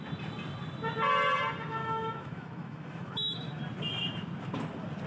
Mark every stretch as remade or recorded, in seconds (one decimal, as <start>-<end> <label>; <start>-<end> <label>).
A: 0.0-1.8 recorded; 1.8-3.6 remade; 3.6-5.1 recorded